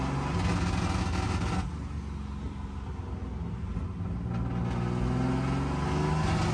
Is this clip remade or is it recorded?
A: recorded